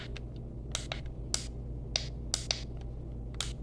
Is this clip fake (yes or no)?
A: no